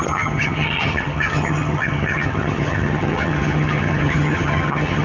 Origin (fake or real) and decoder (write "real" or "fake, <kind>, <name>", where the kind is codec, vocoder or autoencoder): fake, vocoder, HiFi-GAN